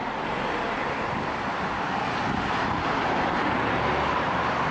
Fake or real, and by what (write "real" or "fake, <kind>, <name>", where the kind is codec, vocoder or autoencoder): real